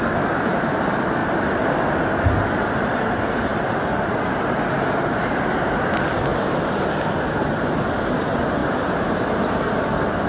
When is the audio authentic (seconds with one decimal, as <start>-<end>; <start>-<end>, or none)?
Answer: 0.0-1.2; 1.9-6.3; 8.1-8.6; 9.3-10.3